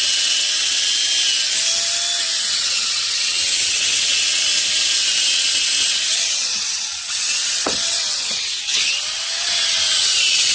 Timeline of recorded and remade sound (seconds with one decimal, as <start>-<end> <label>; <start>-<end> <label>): 0.0-0.9 remade; 0.9-2.2 recorded; 2.2-4.5 remade; 4.5-5.3 recorded; 5.3-10.5 remade